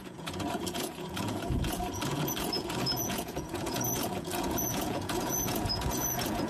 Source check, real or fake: fake